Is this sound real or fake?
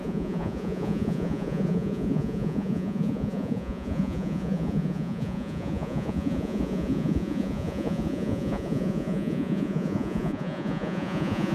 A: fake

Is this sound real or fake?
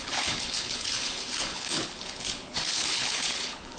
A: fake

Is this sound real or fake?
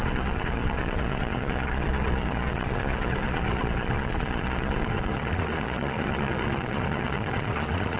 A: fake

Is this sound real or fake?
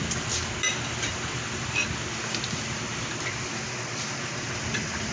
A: fake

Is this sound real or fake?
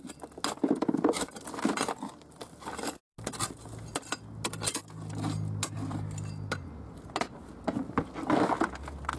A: real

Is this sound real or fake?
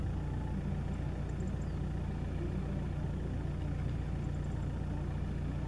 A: real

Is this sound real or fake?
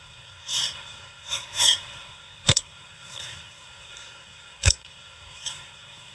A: fake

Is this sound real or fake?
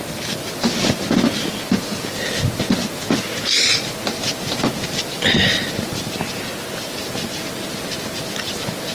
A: real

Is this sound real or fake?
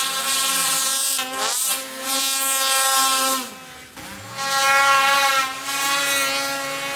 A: real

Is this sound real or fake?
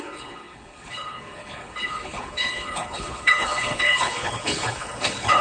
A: fake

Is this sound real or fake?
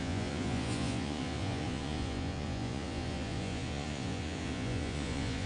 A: fake